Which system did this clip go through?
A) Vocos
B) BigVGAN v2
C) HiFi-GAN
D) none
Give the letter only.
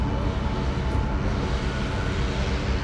D